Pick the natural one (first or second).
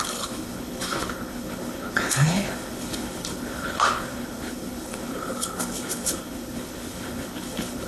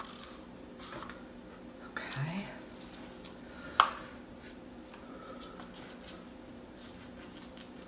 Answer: second